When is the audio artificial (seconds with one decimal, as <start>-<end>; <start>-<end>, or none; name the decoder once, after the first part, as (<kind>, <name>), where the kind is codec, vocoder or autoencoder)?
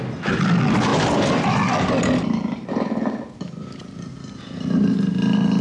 0.9-3.1 (vocoder, BigVGAN v2)